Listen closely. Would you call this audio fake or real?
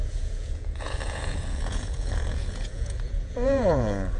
fake